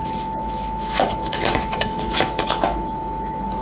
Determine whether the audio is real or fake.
fake